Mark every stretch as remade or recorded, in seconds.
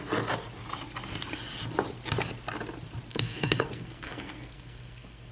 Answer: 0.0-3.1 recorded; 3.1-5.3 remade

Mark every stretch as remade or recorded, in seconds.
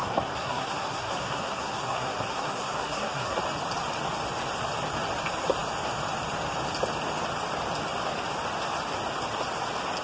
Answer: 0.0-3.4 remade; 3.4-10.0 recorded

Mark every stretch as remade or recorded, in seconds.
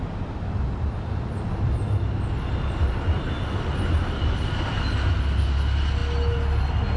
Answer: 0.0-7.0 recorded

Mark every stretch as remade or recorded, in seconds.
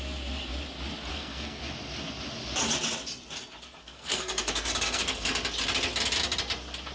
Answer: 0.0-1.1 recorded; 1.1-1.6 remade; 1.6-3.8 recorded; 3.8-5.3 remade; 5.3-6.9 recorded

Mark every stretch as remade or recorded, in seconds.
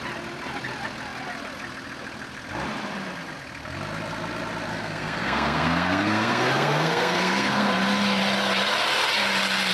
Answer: 0.0-4.7 recorded; 4.7-7.7 remade; 7.7-9.7 recorded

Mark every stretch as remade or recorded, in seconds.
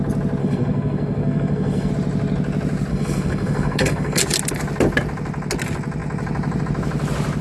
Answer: 0.0-0.4 recorded; 0.4-1.9 remade; 1.9-2.9 recorded; 2.9-4.2 remade; 4.2-7.4 recorded